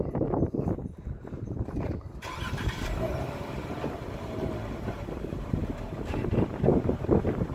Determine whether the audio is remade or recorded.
remade